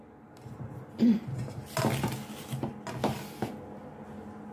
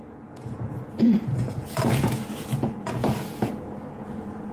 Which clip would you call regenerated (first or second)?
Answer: second